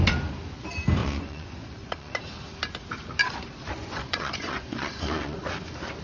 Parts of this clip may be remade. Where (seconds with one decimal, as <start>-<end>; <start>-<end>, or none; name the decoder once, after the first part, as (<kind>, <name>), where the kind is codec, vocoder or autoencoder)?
1.0-2.2 (vocoder, Vocos); 3.8-5.4